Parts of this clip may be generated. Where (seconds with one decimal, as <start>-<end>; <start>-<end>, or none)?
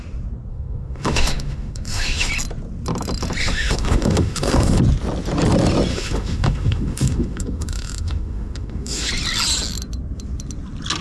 0.5-2.3; 3.4-4.8; 5.9-9.1